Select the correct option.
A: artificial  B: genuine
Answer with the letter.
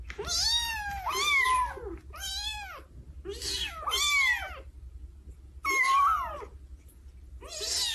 B